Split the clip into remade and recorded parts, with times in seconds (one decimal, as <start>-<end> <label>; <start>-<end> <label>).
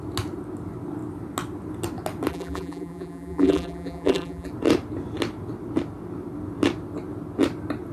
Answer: 0.0-2.3 recorded; 2.3-4.5 remade; 4.5-7.9 recorded